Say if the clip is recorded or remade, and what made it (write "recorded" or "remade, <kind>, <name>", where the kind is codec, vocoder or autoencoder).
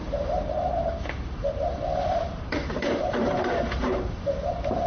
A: remade, vocoder, BigVGAN v2